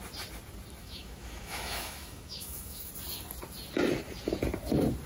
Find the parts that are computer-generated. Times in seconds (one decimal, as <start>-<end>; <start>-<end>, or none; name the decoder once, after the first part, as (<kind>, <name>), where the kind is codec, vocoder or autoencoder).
0.8-2.9 (autoencoder, DAC-VAE)